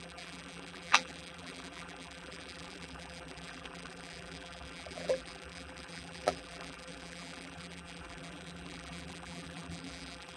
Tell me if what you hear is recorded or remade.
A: remade